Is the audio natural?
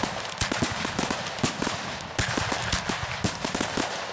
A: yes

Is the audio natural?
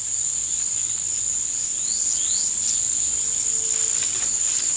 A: yes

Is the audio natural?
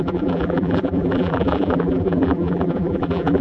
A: no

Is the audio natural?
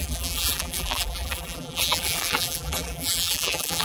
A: no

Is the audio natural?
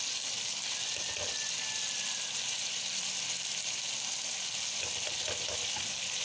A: yes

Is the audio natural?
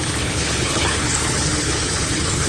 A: no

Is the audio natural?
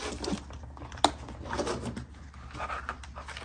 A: yes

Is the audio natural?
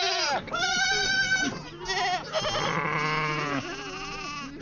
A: yes